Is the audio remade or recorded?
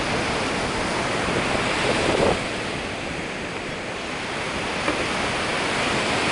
recorded